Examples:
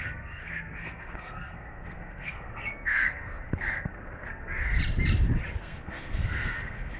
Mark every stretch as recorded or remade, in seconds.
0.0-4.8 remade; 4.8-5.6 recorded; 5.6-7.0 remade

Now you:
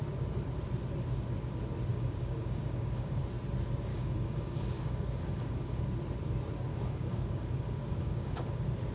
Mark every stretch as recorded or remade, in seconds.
0.0-1.9 recorded; 1.9-3.2 remade; 3.2-3.9 recorded; 3.9-5.8 remade; 5.8-6.7 recorded; 6.7-8.5 remade; 8.5-8.9 recorded

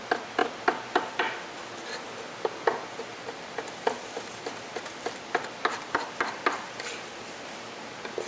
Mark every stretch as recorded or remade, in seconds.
0.0-0.4 recorded; 0.4-1.1 remade; 1.1-3.1 recorded; 3.1-7.1 remade; 7.1-8.3 recorded

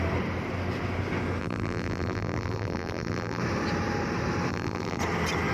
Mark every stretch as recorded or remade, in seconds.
0.0-1.4 recorded; 1.4-3.4 remade; 3.4-4.5 recorded; 4.5-5.0 remade; 5.0-5.5 recorded

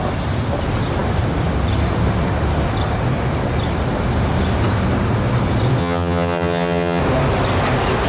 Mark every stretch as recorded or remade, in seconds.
0.0-5.8 recorded; 5.8-7.0 remade; 7.0-8.1 recorded

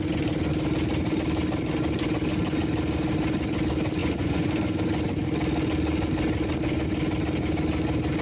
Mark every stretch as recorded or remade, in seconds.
0.0-4.0 recorded; 4.0-4.5 remade; 4.5-8.2 recorded

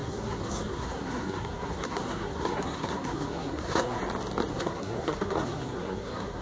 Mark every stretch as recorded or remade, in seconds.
0.0-4.0 remade; 4.0-4.5 recorded; 4.5-6.4 remade

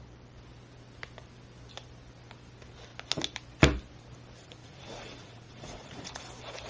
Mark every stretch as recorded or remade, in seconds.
0.0-4.6 recorded; 4.6-6.2 remade; 6.2-6.7 recorded